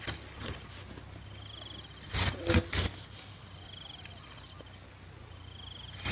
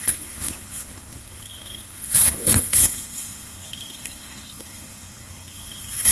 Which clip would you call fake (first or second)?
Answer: second